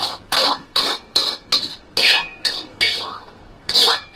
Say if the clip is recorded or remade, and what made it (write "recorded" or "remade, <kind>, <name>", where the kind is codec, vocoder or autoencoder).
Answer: remade, codec, SNAC